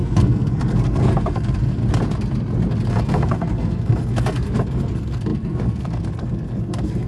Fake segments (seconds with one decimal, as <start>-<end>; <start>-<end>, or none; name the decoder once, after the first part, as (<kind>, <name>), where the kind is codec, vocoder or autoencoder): 0.0-1.8 (codec, SNAC); 2.9-7.1